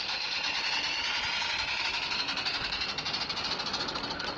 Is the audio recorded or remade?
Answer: recorded